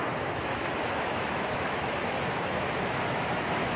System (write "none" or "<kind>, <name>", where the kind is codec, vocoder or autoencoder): autoencoder, DAC-VAE